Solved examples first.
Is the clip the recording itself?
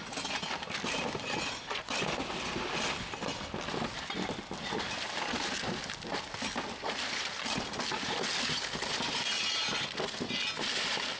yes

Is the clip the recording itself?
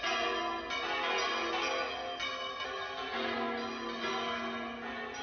yes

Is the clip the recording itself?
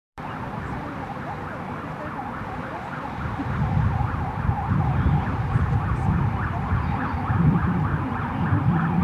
no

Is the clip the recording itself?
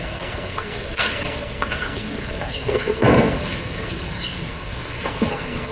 no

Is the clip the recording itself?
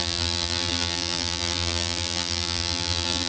no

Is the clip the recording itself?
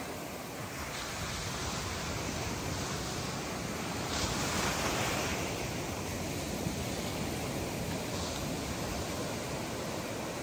yes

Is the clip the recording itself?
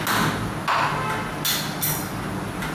yes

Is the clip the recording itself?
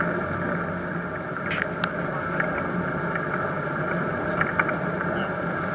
yes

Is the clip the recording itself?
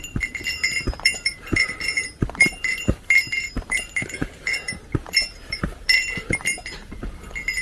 no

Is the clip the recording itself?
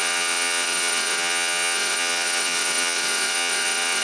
no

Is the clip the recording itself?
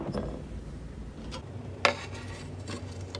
yes